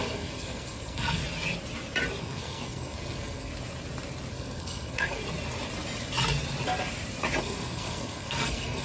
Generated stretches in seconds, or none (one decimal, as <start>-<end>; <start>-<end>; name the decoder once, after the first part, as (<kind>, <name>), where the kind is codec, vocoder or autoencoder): 0.0-1.2 (codec, SNAC); 2.2-3.5; 4.3-5.2; 7.4-8.8